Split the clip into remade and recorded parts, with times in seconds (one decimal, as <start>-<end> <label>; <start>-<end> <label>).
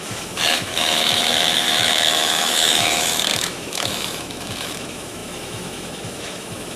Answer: 0.0-6.8 remade